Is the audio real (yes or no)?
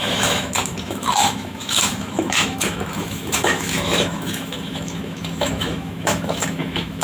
no